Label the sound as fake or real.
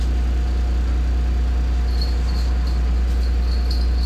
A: real